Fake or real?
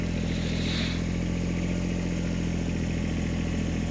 real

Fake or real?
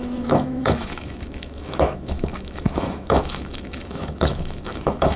fake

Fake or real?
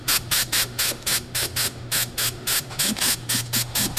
fake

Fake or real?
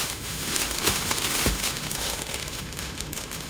fake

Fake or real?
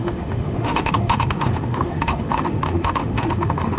fake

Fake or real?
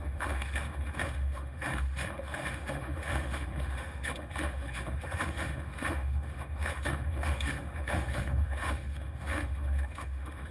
fake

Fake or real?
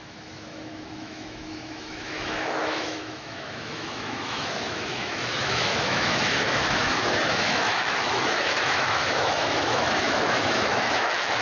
fake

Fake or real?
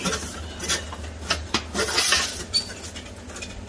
real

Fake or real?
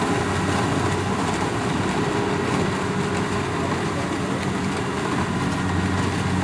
real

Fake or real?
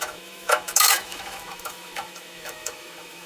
fake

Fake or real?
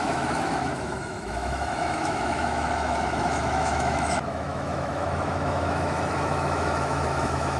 fake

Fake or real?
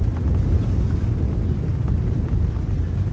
real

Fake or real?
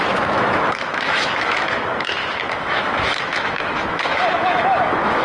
fake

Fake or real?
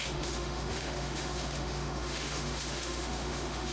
fake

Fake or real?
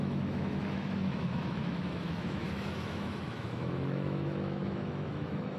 fake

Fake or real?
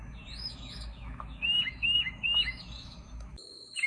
fake